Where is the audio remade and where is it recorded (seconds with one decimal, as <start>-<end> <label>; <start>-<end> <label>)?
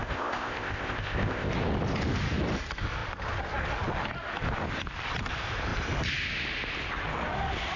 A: 0.0-1.5 remade; 1.5-7.8 recorded